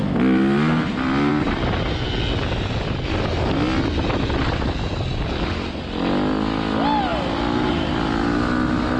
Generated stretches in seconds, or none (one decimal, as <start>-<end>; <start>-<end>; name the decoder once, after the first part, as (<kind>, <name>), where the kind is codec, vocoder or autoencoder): none